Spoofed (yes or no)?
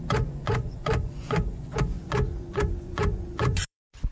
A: yes